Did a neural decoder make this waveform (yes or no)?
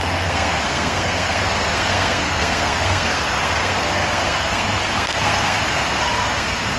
yes